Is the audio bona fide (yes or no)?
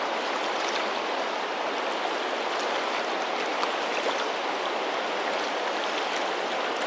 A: yes